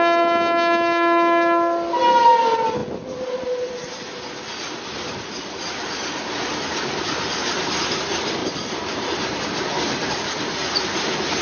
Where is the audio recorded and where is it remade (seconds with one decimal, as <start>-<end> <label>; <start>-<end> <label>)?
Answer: 0.0-8.4 recorded; 8.4-9.4 remade; 9.4-11.4 recorded